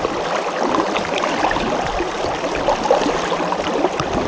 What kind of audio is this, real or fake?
fake